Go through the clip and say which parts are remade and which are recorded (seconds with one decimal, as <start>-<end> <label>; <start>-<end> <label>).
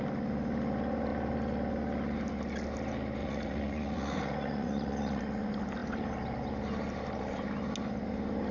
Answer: 0.0-3.2 recorded; 3.2-5.2 remade; 5.2-8.5 recorded